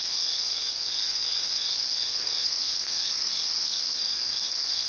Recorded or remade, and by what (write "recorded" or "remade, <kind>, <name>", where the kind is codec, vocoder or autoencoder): remade, codec, SNAC